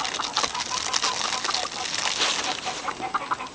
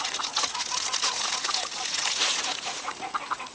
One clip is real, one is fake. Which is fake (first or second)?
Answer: second